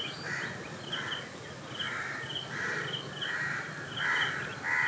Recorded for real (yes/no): yes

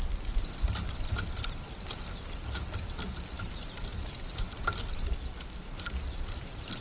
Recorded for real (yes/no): yes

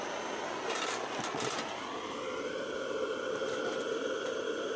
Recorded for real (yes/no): yes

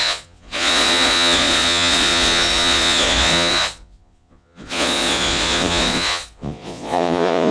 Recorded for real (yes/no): no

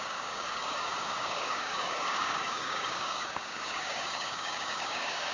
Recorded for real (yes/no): no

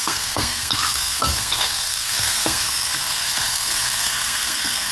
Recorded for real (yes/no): no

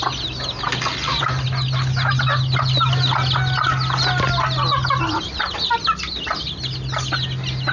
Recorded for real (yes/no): yes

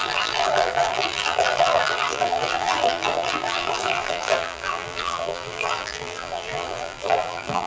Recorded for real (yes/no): no